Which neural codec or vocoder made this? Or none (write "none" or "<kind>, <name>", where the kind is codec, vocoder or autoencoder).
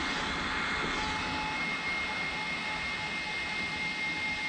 none